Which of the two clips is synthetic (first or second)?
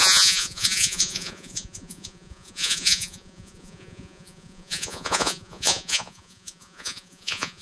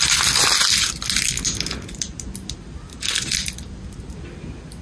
first